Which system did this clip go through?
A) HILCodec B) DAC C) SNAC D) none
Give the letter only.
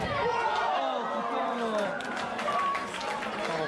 D